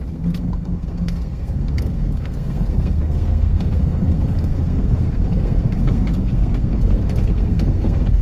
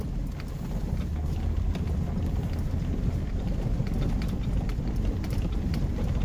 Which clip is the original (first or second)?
second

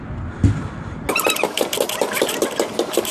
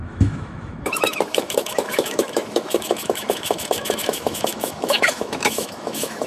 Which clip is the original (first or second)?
first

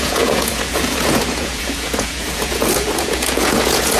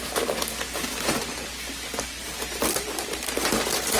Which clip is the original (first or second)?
second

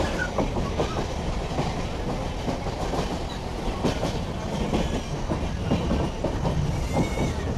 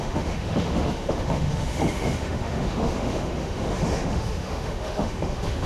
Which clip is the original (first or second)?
first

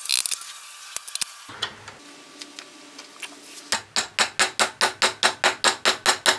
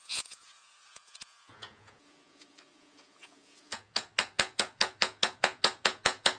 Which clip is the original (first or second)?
first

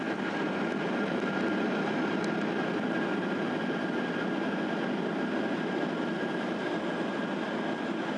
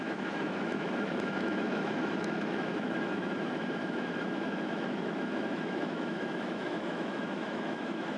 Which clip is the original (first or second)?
first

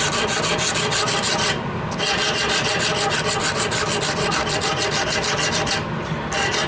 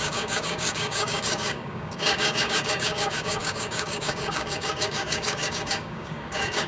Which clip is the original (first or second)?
first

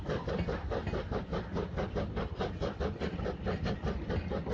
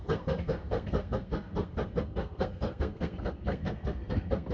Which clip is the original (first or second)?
first